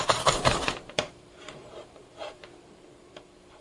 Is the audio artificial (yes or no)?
yes